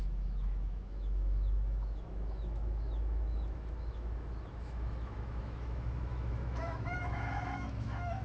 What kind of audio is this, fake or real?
fake